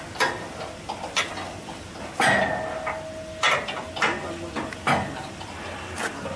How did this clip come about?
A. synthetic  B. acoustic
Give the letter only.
B